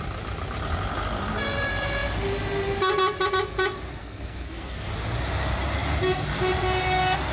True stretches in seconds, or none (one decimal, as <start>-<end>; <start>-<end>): 0.0-4.0; 4.9-7.3